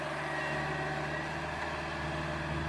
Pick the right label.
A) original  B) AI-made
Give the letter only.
A